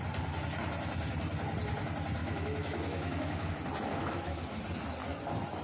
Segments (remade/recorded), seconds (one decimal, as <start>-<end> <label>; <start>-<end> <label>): 0.0-2.2 recorded; 2.2-3.5 remade; 3.5-3.9 recorded; 3.9-4.6 remade; 4.6-5.6 recorded